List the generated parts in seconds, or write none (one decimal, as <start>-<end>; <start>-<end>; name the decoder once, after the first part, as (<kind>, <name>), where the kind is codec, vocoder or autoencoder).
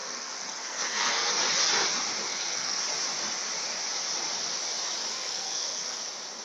0.0-1.3 (codec, SNAC); 2.3-2.8; 5.1-6.0